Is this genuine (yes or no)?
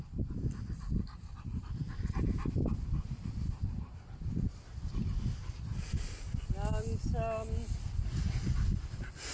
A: yes